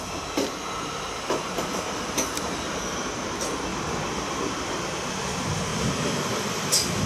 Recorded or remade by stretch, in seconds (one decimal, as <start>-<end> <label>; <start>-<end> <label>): 0.0-1.7 recorded; 1.7-3.2 remade; 3.2-3.7 recorded; 3.7-4.7 remade; 4.7-5.7 recorded; 5.7-6.5 remade; 6.5-7.1 recorded